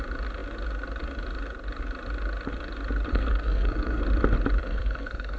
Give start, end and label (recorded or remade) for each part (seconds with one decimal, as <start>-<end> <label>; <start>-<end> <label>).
0.0-3.1 recorded; 3.1-4.0 remade; 4.0-4.6 recorded; 4.6-5.4 remade